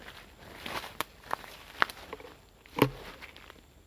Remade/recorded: recorded